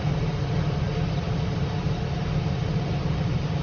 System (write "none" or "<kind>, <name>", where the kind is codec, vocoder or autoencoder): none